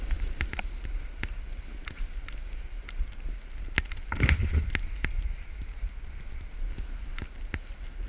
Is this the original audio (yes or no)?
yes